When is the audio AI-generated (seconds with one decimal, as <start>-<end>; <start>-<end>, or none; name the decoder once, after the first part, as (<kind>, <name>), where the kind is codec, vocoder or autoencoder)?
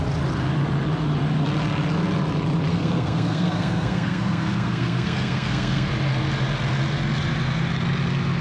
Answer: 2.7-5.9 (codec, SNAC)